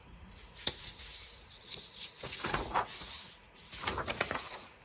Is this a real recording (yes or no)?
no